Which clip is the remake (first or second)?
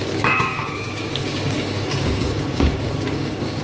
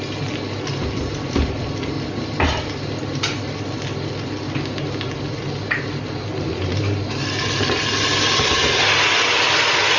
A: first